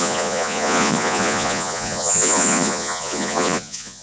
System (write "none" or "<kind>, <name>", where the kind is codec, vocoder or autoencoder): vocoder, Vocos